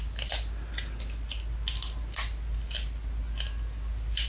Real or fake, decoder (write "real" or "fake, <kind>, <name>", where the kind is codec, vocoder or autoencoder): real